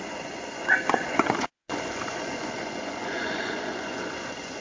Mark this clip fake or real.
fake